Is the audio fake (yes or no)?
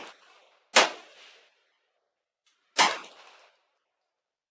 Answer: no